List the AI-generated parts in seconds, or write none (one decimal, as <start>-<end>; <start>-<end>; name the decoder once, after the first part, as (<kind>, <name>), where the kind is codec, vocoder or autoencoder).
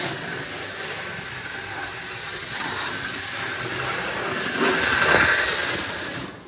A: 2.2-2.7 (vocoder, HiFi-GAN)